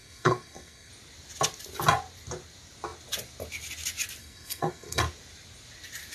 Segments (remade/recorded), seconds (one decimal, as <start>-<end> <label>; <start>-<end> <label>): 0.0-0.9 remade; 0.9-4.2 recorded; 4.2-5.0 remade; 5.0-6.1 recorded